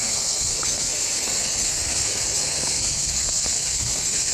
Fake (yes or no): yes